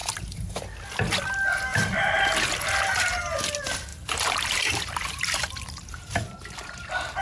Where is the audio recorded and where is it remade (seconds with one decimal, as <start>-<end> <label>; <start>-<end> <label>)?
0.0-0.5 remade; 0.5-1.7 recorded; 1.7-3.4 remade; 3.4-3.9 recorded; 3.9-4.8 remade; 4.8-7.2 recorded